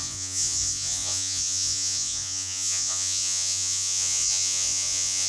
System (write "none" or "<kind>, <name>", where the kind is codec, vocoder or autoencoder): vocoder, Vocos